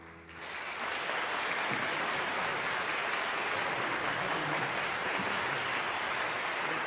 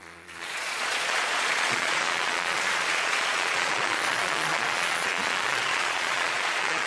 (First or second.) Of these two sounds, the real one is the first